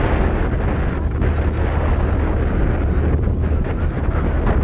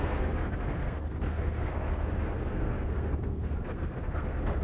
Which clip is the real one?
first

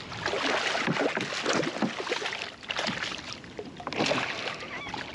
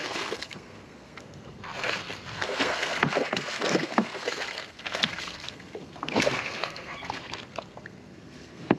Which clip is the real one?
first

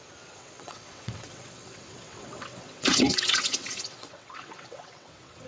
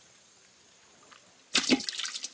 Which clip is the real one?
second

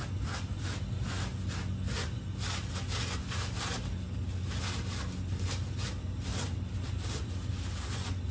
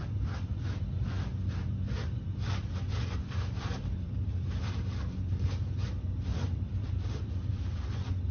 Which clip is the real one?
first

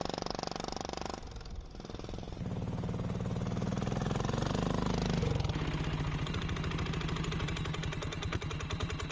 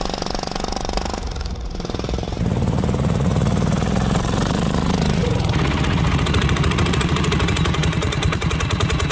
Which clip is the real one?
first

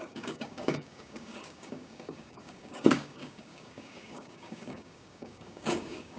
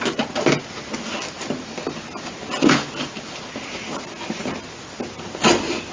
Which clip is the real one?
second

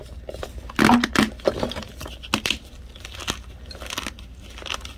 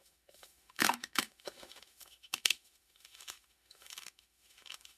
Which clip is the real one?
first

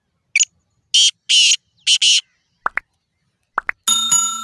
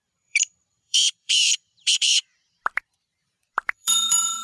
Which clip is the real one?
first